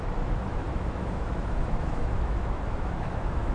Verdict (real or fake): fake